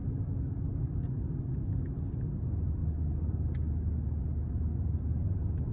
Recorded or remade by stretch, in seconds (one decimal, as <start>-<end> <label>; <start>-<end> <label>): 0.0-5.7 recorded